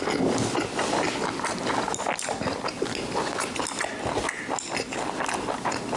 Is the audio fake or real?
real